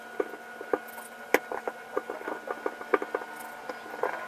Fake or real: real